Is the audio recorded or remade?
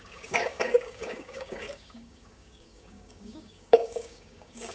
remade